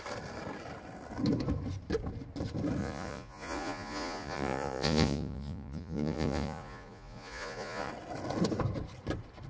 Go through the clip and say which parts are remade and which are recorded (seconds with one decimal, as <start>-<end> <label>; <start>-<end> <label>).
0.0-2.8 recorded; 2.8-7.9 remade; 7.9-9.5 recorded